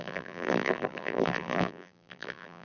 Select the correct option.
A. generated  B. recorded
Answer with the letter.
A